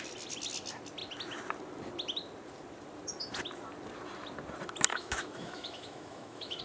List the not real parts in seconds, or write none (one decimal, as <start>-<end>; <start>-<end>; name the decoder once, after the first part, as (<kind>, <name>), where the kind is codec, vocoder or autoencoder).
4.9-6.6 (autoencoder, DAC-VAE)